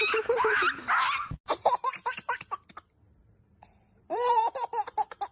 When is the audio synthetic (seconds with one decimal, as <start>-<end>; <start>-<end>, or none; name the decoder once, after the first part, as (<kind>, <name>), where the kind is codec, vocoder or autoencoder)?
1.5-2.7 (vocoder, BigVGAN v2); 3.2-4.7